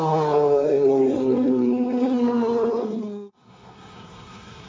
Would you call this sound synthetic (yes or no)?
yes